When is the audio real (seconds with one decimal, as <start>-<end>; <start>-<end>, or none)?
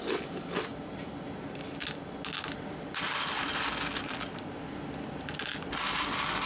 0.0-6.5